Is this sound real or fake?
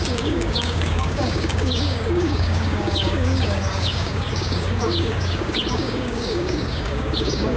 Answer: fake